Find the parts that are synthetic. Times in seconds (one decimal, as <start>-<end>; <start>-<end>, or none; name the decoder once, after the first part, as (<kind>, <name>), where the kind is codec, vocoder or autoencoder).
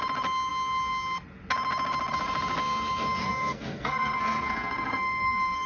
3.2-5.7 (codec, SNAC)